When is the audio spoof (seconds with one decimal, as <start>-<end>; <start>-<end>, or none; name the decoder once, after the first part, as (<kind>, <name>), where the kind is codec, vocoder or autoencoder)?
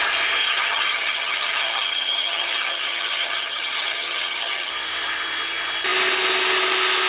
0.4-4.7 (vocoder, HiFi-GAN)